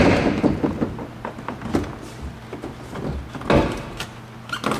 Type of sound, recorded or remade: recorded